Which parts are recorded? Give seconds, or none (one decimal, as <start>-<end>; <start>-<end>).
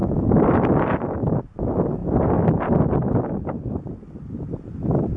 0.7-2.0